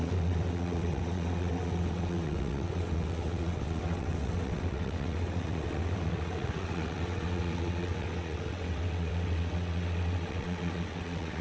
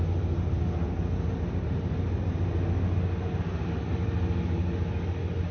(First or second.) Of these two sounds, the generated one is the first